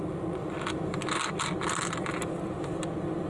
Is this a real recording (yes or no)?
yes